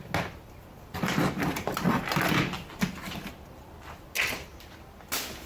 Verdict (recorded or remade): recorded